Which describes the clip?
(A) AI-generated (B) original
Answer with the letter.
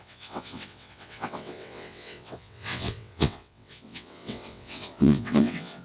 A